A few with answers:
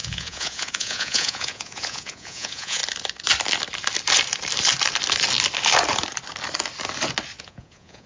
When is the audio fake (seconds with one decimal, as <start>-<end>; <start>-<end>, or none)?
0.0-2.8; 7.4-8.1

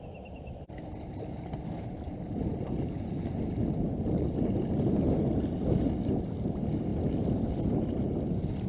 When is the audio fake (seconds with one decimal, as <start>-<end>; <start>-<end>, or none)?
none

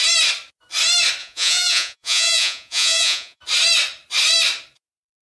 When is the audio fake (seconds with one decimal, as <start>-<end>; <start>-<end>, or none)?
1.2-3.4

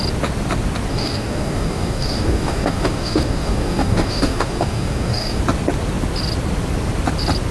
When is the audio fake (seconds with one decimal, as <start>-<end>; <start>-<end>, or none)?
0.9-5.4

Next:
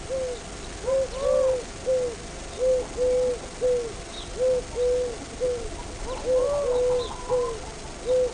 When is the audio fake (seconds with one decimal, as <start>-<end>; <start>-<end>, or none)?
none

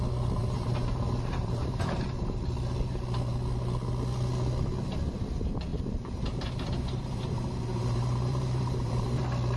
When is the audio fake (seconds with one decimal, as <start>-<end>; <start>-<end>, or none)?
0.4-2.4; 5.7-9.2